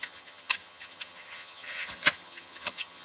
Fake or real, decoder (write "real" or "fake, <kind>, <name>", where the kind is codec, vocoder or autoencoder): fake, vocoder, HiFi-GAN